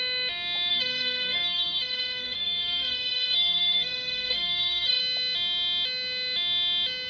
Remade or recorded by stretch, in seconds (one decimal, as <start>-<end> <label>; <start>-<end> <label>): 0.0-0.7 recorded; 0.7-5.0 remade; 5.0-7.1 recorded